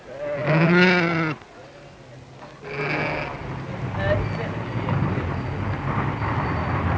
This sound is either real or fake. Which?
real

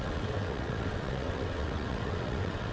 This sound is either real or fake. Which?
fake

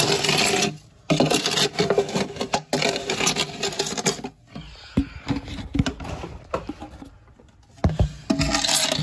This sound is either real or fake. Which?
real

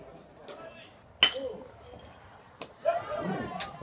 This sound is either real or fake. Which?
real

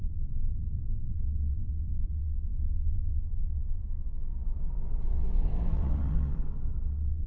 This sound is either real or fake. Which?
fake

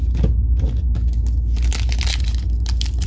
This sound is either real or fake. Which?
real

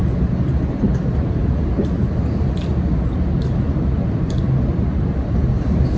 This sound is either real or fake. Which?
real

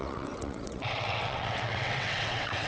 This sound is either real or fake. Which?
fake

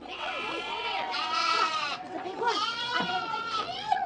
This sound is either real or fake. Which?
fake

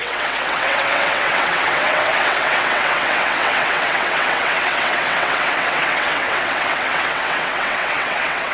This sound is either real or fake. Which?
fake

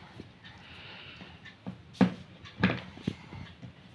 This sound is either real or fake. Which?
real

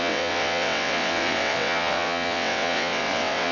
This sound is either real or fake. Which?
fake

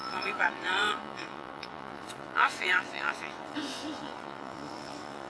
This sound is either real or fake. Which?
fake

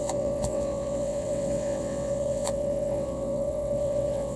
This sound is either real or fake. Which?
fake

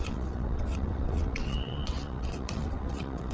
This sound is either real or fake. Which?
fake